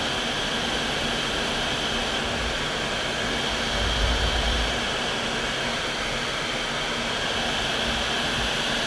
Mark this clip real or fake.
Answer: real